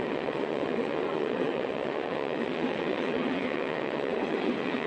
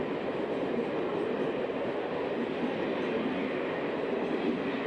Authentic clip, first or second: second